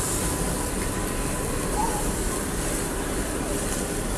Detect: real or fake real